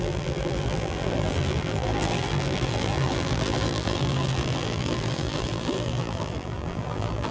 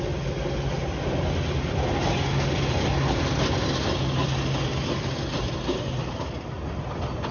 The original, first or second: second